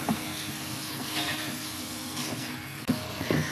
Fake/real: fake